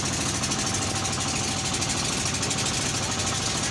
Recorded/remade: recorded